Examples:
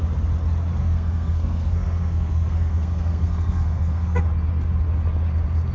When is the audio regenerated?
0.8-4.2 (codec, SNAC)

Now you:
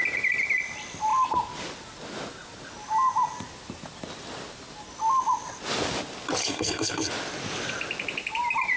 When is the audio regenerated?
6.4-7.1 (codec, SNAC)

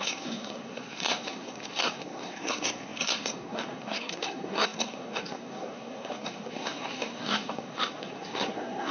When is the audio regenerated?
0.0-8.9 (codec, SNAC)

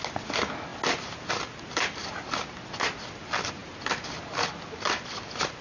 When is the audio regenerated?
none

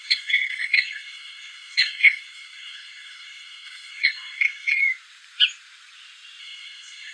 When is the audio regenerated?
0.0-4.8 (codec, SNAC); 6.4-7.1

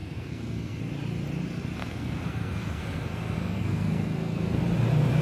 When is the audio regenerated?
0.0-0.8 (codec, SNAC); 1.8-4.6

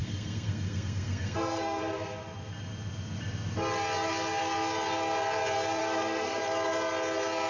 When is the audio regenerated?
0.0-1.8 (codec, SNAC); 5.8-6.4

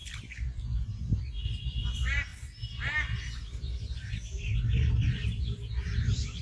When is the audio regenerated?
none